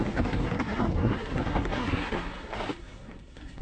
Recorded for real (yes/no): no